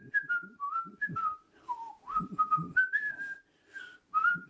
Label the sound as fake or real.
real